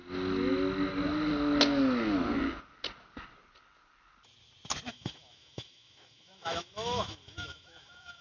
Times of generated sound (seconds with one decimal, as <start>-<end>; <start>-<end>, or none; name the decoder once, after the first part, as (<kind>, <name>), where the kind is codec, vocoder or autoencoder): 4.9-8.2 (autoencoder, DAC-VAE)